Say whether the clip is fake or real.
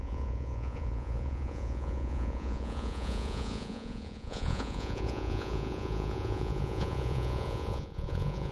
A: fake